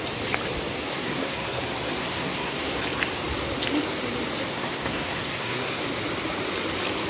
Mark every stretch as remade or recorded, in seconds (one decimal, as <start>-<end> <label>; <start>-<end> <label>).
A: 0.0-0.9 recorded; 0.9-1.6 remade; 1.6-2.0 recorded; 2.0-2.8 remade; 2.8-4.5 recorded; 4.5-5.8 remade; 5.8-7.1 recorded